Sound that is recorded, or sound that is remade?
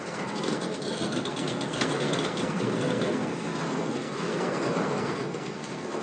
remade